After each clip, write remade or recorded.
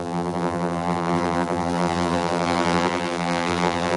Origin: remade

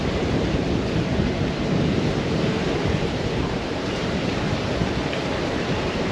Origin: remade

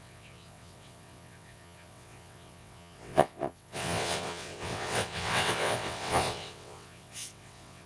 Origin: remade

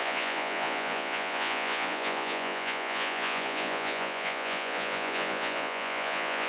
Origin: remade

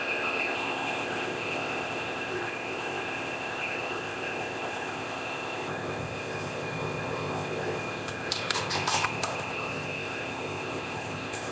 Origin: remade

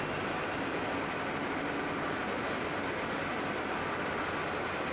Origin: recorded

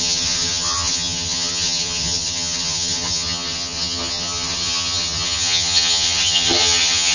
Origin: remade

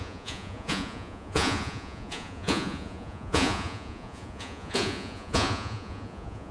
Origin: remade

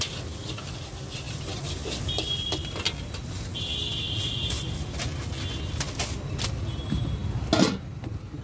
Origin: recorded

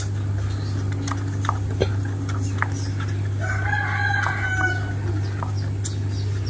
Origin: recorded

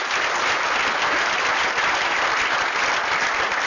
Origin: recorded